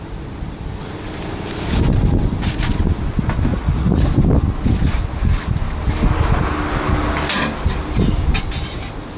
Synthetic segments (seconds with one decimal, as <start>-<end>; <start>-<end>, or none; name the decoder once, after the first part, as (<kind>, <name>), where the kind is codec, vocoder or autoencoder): 3.5-4.0 (vocoder, Vocos)